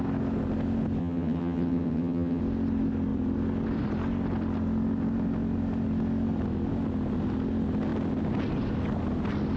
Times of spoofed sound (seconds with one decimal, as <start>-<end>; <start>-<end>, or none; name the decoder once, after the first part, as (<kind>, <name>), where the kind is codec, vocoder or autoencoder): 1.0-2.4 (vocoder, HiFi-GAN)

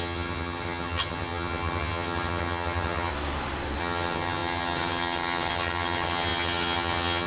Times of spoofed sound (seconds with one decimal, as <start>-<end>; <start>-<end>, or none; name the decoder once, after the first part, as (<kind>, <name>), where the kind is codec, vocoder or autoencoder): 0.0-3.1 (vocoder, HiFi-GAN); 3.8-7.3

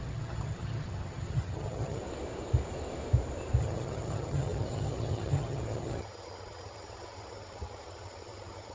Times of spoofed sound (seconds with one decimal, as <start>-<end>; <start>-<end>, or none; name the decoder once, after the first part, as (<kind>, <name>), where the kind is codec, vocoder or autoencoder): 0.0-2.0 (vocoder, HiFi-GAN); 3.6-8.7

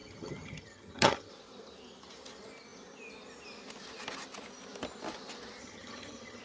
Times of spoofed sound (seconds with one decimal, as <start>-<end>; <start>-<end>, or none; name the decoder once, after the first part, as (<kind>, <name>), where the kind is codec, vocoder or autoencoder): 0.0-1.3 (vocoder, HiFi-GAN); 5.6-6.4

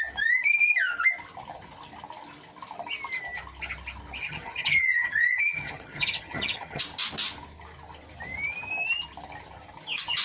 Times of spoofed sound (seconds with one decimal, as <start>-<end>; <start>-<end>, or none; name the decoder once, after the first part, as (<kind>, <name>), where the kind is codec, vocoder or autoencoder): 4.2-6.8 (vocoder, HiFi-GAN)

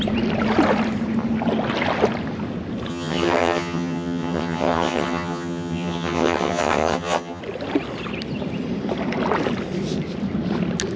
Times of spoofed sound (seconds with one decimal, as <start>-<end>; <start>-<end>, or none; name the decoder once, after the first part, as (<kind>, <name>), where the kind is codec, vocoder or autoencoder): 2.9-7.4 (vocoder, HiFi-GAN)

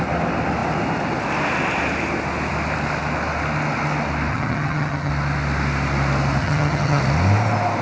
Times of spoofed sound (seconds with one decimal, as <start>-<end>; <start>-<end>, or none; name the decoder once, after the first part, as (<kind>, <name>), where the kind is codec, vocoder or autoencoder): 4.3-5.1 (vocoder, HiFi-GAN); 6.4-7.0

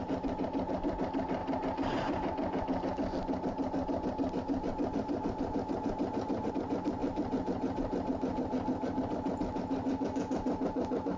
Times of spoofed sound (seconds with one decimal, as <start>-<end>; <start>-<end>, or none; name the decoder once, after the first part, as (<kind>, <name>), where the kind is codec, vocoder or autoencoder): none